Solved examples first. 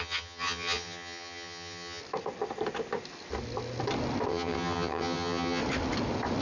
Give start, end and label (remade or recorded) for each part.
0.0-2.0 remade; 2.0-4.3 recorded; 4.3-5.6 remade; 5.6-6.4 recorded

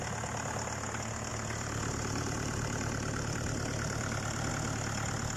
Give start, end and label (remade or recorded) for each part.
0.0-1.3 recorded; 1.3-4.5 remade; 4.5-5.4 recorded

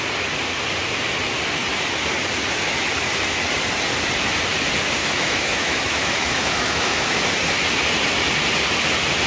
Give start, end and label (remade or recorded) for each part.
0.0-5.0 recorded; 5.0-7.2 remade; 7.2-9.3 recorded

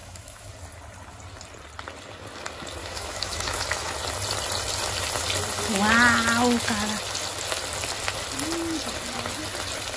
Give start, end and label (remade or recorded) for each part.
0.0-0.5 remade; 0.5-2.8 recorded; 2.8-3.9 remade; 3.9-10.0 recorded